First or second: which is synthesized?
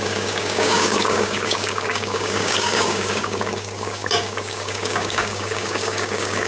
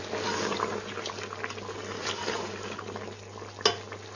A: first